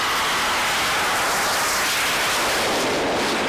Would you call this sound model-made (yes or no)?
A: no